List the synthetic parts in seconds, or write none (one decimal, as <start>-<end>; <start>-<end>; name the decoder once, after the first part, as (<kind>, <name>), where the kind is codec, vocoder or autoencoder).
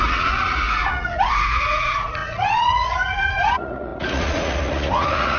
0.0-5.4 (vocoder, Vocos)